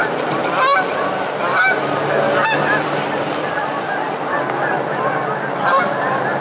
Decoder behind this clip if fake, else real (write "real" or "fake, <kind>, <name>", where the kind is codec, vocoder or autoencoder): real